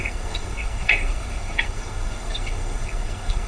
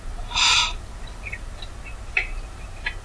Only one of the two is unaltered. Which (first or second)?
second